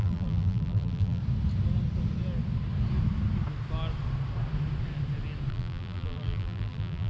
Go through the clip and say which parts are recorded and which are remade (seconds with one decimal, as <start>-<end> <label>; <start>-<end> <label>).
0.0-1.2 remade; 1.2-5.5 recorded; 5.5-7.1 remade